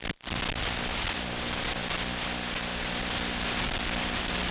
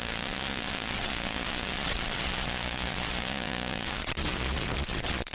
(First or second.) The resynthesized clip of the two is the second